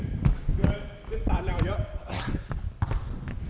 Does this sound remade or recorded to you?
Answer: recorded